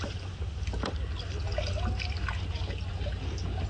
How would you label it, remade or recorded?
recorded